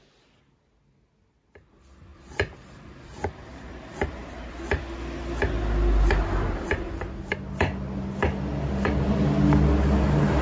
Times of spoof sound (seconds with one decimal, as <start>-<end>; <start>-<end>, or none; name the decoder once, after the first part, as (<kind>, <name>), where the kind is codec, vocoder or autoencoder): 2.1-4.5 (vocoder, BigVGAN v2)